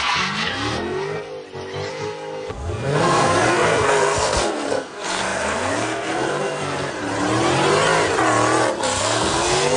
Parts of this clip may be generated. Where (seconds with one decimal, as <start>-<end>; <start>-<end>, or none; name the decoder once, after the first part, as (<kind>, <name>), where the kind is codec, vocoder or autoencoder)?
0.0-1.3 (codec, SNAC); 1.9-7.0; 9.0-9.8